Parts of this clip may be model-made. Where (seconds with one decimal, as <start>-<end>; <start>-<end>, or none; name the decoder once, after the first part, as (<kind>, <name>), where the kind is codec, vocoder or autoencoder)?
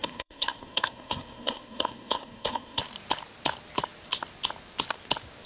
0.0-2.8 (codec, SNAC)